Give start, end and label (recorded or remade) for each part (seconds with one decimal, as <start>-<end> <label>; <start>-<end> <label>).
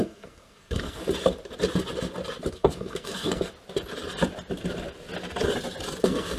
0.0-1.0 remade; 1.0-2.5 recorded; 2.5-3.5 remade; 3.5-6.0 recorded; 6.0-6.4 remade